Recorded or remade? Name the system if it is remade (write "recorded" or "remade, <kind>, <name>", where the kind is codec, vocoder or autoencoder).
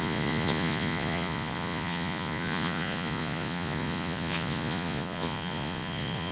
remade, vocoder, Vocos